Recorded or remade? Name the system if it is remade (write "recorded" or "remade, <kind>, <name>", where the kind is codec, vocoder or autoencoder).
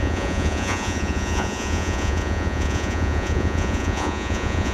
remade, vocoder, Vocos